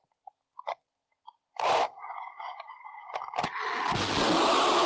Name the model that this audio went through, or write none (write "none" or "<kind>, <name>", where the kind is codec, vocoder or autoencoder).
none